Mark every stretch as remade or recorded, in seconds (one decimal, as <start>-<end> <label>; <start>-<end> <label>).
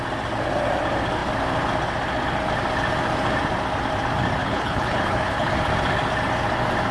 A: 0.0-4.4 recorded; 4.4-5.5 remade; 5.5-6.9 recorded